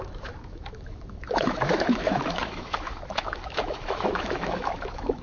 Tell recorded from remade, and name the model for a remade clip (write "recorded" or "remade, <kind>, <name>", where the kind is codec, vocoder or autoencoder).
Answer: remade, autoencoder, DAC-VAE